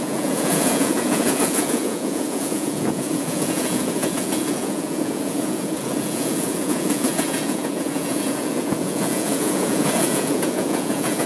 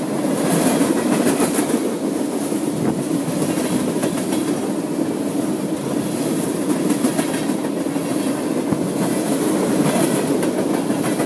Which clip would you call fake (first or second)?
first